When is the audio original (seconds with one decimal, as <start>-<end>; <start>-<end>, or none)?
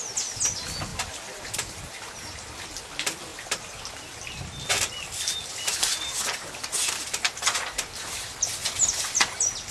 0.0-0.9; 2.4-3.3; 3.8-9.7